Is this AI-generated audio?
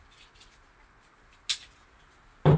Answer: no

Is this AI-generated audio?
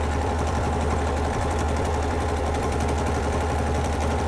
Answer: yes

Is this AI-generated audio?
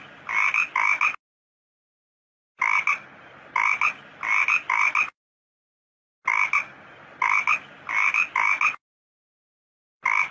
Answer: no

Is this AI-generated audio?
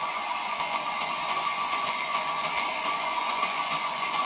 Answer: yes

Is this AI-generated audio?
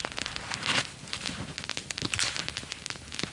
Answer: no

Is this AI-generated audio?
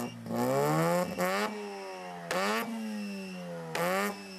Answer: no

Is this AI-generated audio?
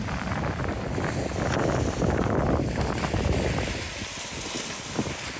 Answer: no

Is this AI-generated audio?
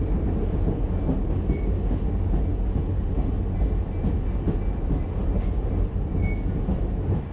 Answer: no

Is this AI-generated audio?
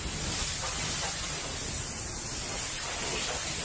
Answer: no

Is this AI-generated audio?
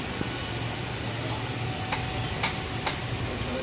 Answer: no